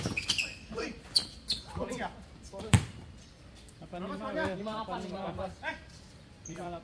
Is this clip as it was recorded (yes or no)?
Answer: no